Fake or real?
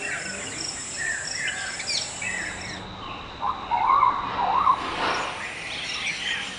real